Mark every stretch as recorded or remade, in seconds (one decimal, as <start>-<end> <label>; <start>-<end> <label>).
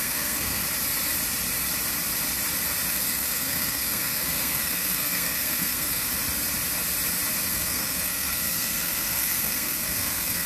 0.0-0.6 remade; 0.6-2.9 recorded; 2.9-6.1 remade; 6.1-7.5 recorded; 7.5-10.5 remade